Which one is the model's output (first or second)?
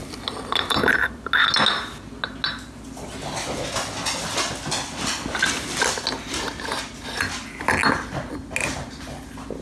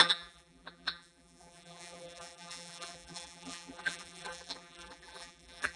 second